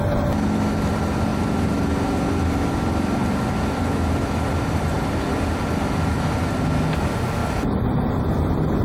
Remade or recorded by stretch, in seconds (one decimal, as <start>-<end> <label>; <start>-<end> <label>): 0.0-7.4 recorded; 7.4-8.1 remade; 8.1-8.8 recorded